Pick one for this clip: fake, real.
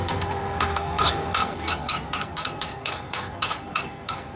fake